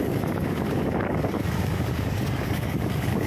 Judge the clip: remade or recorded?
remade